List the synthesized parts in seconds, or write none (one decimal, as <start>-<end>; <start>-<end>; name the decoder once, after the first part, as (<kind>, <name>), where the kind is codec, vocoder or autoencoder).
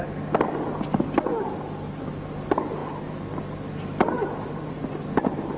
none